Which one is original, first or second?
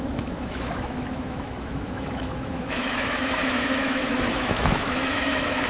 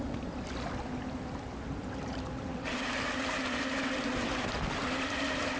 second